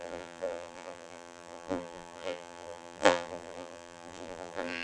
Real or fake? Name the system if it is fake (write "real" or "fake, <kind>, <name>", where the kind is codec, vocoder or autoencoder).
fake, vocoder, BigVGAN v2